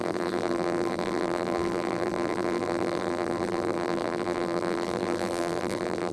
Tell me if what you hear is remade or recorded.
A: remade